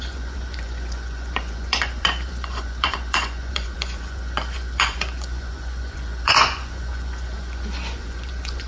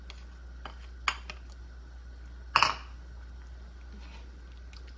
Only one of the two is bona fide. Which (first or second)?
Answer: second